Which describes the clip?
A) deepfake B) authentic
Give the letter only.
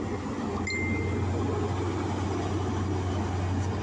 B